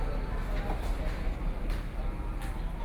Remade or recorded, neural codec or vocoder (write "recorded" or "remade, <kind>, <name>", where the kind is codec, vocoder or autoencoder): recorded